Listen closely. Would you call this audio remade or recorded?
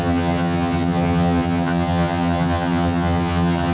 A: remade